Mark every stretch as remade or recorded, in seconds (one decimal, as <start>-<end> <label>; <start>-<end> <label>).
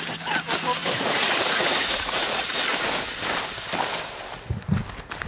0.0-0.8 recorded; 0.8-2.6 remade; 2.6-5.3 recorded